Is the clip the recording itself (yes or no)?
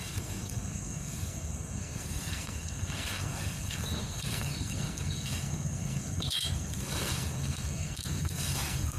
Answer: no